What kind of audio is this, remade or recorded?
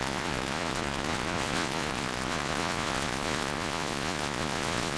remade